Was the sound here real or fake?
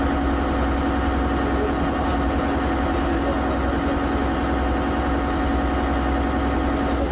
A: real